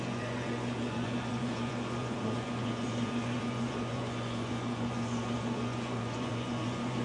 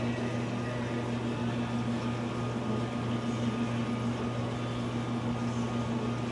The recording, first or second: second